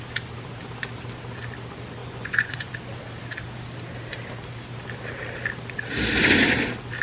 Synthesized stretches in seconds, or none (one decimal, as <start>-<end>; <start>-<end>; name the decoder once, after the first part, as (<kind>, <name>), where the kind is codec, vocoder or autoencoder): 2.0-2.7 (vocoder, Vocos)